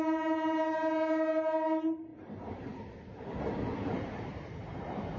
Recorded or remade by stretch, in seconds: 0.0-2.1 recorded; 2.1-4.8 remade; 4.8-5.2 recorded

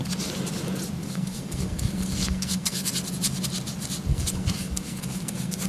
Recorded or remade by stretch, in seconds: 0.0-1.0 recorded; 1.0-2.9 remade; 2.9-4.1 recorded; 4.1-5.7 remade

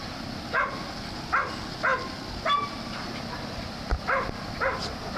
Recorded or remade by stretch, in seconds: 0.0-5.2 recorded

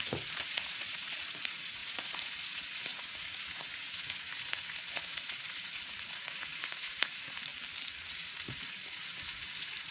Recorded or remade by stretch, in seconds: 0.0-7.5 remade; 7.5-8.0 recorded; 8.0-9.9 remade

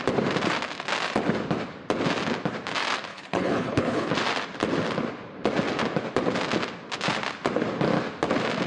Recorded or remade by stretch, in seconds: 0.0-3.1 recorded; 3.1-4.1 remade; 4.1-8.7 recorded